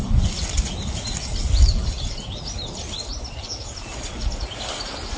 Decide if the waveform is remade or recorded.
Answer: recorded